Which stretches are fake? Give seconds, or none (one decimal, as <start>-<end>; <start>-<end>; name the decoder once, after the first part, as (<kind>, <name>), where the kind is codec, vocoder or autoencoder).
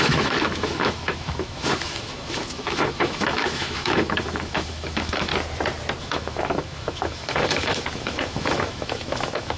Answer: 0.0-5.3 (autoencoder, DAC-VAE); 6.0-9.6